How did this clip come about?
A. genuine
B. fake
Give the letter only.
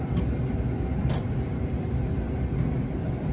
A